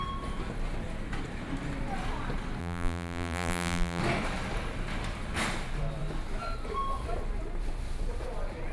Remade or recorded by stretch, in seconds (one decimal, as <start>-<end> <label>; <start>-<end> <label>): 0.0-2.6 recorded; 2.6-4.0 remade; 4.0-8.7 recorded